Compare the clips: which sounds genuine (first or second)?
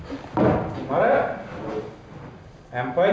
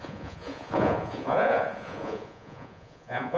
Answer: first